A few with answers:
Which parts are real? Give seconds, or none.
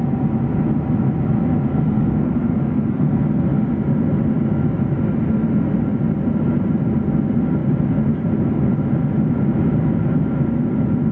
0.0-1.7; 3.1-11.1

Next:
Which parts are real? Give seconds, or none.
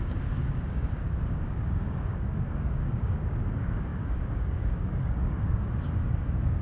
none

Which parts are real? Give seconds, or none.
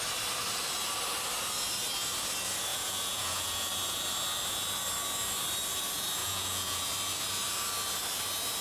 0.0-2.7; 3.7-6.2; 6.8-8.6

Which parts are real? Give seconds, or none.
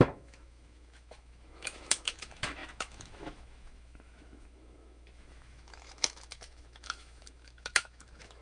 none